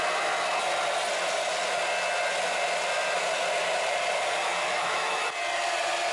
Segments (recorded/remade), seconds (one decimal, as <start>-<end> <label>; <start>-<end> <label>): 0.0-4.6 recorded; 4.6-5.3 remade; 5.3-6.1 recorded